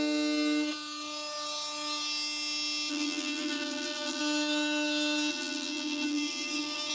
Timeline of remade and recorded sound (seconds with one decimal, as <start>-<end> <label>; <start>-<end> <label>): 0.0-2.9 recorded; 2.9-4.2 remade; 4.2-5.3 recorded; 5.3-6.9 remade